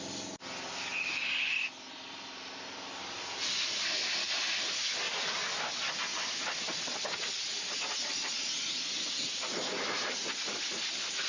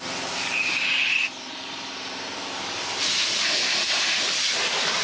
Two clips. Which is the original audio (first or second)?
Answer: first